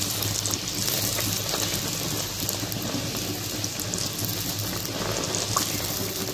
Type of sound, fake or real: real